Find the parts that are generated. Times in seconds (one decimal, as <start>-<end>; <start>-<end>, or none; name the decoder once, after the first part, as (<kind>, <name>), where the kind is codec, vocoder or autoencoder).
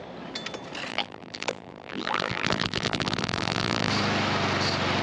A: 0.9-3.9 (vocoder, BigVGAN v2)